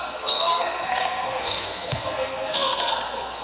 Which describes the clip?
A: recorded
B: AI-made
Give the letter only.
B